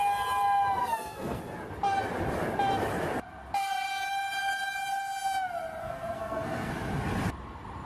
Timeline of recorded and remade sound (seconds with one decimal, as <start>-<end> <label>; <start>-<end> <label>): 0.0-0.8 recorded; 0.8-1.4 remade; 1.4-5.8 recorded; 5.8-6.7 remade; 6.7-7.9 recorded